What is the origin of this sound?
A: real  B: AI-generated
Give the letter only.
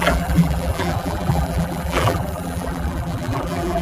B